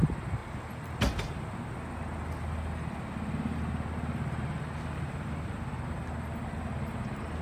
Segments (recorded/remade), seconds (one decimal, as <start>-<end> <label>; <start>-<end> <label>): 0.0-0.4 recorded; 0.4-1.0 remade; 1.0-7.4 recorded